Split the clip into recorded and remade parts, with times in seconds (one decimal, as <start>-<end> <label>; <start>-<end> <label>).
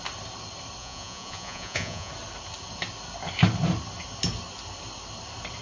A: 0.0-0.8 recorded; 0.8-2.1 remade; 2.1-5.6 recorded